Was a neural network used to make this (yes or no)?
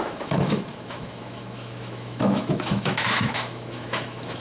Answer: yes